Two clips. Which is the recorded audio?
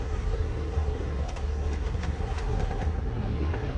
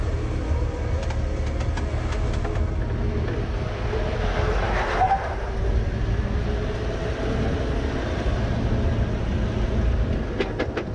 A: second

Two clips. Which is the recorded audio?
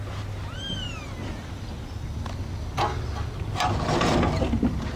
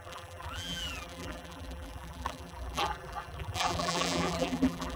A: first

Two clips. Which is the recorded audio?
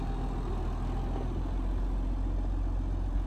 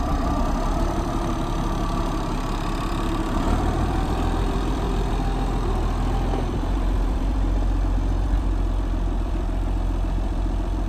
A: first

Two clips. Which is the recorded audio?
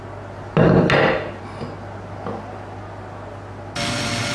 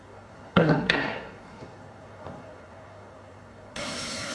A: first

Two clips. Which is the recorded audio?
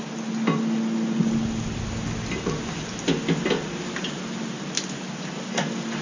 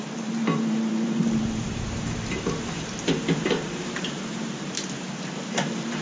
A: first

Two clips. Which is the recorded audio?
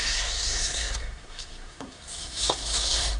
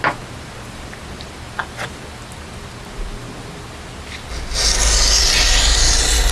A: second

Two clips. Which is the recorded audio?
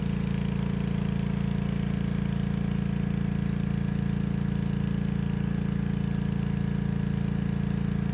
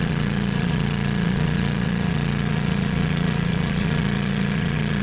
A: first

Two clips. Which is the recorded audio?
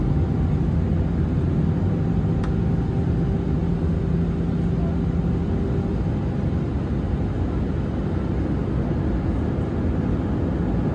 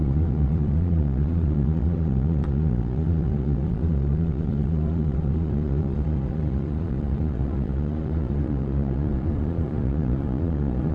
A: first